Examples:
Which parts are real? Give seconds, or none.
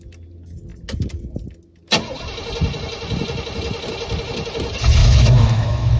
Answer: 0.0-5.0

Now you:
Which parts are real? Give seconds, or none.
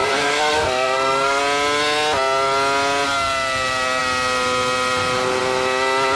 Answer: 1.4-6.2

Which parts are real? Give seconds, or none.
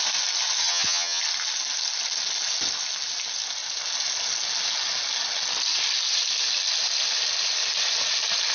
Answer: 0.0-0.6; 1.2-8.5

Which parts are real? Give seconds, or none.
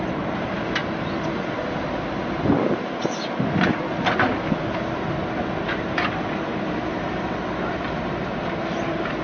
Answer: 0.8-5.6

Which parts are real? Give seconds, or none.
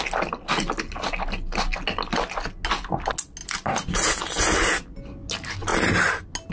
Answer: 0.0-6.5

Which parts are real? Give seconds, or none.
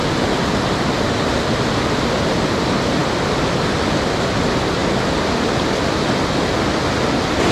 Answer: 0.0-7.5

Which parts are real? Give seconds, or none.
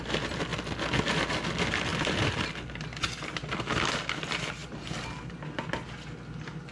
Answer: 0.0-1.9; 2.5-6.7